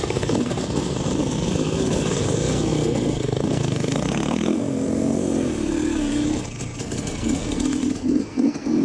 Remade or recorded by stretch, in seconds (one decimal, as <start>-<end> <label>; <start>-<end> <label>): 0.0-8.8 remade